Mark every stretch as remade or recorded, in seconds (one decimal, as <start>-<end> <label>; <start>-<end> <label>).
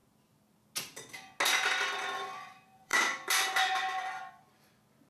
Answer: 0.0-2.5 recorded; 2.5-5.1 remade